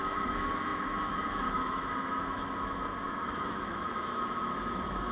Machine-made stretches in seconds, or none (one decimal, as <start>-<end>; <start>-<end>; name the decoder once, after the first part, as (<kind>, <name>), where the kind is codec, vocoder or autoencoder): 0.0-5.1 (autoencoder, DAC-VAE)